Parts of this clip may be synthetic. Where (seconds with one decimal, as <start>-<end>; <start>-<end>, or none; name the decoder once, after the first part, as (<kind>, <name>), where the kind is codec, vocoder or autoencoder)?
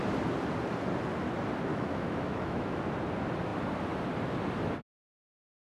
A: 1.7-2.8 (autoencoder, DAC-VAE)